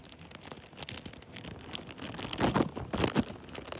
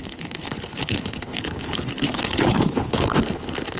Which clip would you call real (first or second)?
first